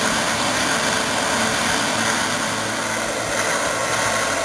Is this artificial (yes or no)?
no